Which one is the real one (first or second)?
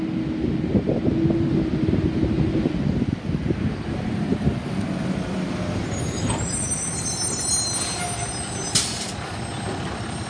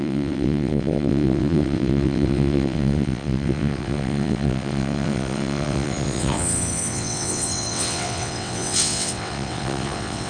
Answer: first